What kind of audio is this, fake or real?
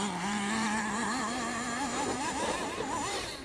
fake